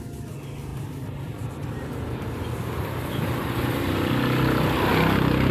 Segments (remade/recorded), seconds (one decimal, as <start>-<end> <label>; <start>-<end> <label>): 0.0-0.7 recorded; 0.7-1.5 remade; 1.5-5.5 recorded